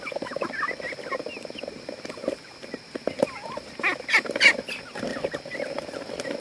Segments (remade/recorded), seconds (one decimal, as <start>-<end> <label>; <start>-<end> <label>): 0.0-6.4 recorded